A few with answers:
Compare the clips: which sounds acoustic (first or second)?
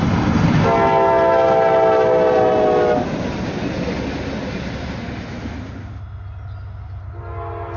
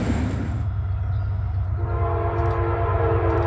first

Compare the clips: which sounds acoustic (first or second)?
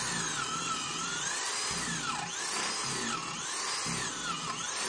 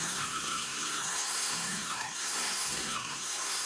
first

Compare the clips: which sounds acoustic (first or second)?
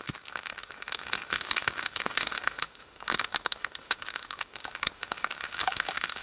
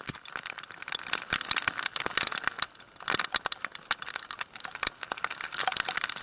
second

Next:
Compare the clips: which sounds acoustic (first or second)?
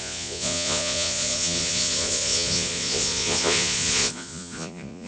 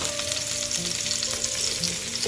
second